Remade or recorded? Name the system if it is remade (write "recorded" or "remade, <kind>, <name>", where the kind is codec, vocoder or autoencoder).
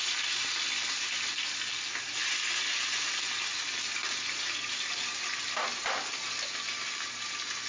recorded